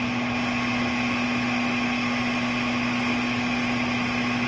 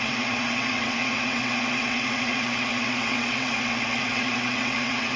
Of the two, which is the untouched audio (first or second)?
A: first